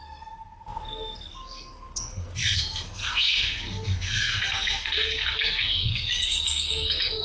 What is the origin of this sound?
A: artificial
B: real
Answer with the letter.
A